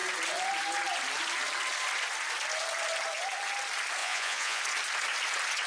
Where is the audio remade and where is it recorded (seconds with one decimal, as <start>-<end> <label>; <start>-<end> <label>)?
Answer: 0.0-4.0 recorded; 4.0-4.6 remade; 4.6-5.7 recorded